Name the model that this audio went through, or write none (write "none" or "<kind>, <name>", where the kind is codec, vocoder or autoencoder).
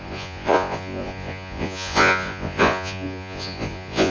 vocoder, Vocos